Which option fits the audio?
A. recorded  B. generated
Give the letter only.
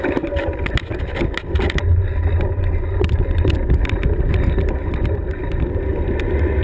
A